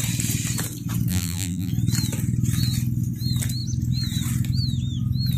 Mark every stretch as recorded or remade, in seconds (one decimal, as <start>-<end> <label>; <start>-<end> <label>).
0.0-1.1 recorded; 1.1-1.7 remade; 1.7-5.4 recorded